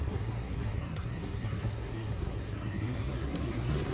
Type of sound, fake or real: fake